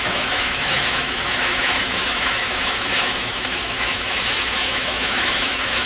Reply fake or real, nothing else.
fake